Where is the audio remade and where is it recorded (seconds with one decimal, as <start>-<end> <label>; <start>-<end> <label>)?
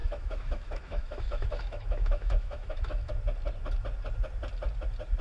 0.0-3.1 remade; 3.1-5.2 recorded